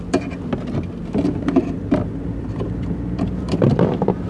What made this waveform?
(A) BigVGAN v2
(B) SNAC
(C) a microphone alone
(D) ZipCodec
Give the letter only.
A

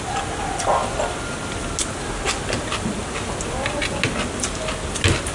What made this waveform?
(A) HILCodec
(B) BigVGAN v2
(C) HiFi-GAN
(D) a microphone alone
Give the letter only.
D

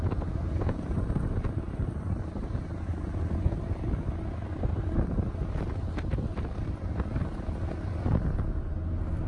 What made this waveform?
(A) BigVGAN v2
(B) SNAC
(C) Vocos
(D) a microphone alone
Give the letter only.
D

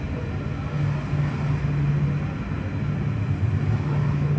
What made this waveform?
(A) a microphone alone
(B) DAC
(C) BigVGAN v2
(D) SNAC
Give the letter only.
A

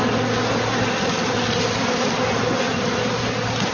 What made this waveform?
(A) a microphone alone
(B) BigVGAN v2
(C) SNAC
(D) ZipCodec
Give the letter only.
A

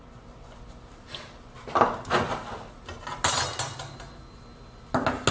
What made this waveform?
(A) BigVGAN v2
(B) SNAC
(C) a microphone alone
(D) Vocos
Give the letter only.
C